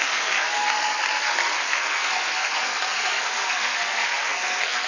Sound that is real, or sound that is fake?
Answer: fake